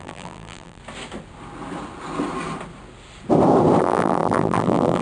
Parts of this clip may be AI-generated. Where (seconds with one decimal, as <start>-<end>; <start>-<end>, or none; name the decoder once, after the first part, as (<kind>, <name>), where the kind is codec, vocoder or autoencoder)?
0.0-0.8 (vocoder, BigVGAN v2); 3.8-5.0